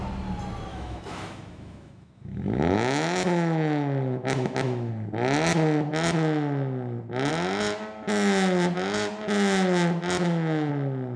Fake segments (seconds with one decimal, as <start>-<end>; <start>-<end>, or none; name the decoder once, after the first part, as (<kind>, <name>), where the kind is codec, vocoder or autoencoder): 0.7-4.9 (autoencoder, DAC-VAE); 10.2-10.7